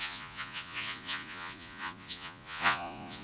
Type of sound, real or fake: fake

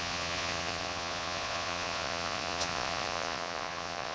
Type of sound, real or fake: fake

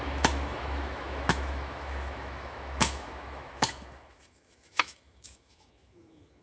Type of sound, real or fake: fake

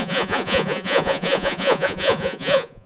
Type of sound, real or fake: fake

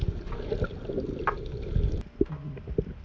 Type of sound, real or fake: real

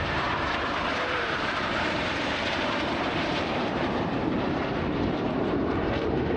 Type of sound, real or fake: fake